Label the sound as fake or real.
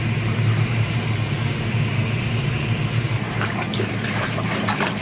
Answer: fake